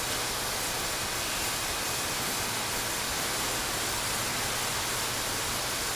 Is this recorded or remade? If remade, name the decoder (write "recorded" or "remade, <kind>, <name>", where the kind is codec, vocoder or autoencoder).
recorded